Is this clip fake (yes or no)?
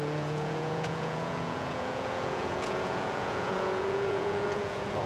yes